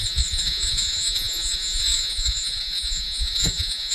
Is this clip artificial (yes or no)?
yes